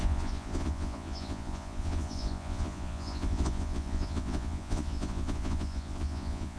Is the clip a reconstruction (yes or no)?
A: yes